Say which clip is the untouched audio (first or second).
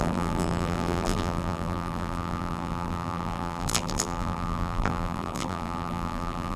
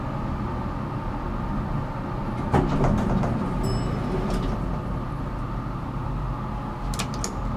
second